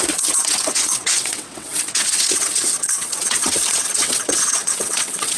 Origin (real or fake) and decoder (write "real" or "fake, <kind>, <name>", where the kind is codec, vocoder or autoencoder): fake, vocoder, WaveNeXt